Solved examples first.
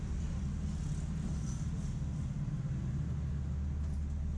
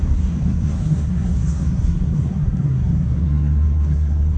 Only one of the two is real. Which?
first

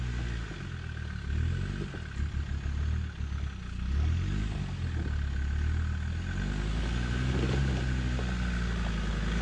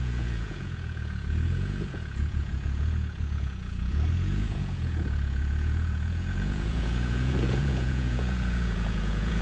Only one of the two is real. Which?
first